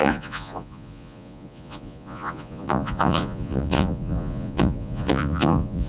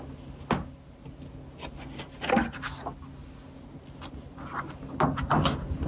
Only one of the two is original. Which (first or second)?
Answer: second